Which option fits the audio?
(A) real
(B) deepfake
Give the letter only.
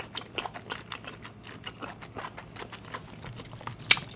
A